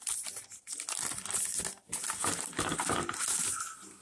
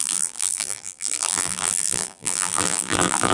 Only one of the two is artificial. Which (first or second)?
second